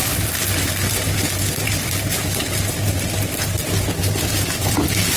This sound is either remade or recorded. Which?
recorded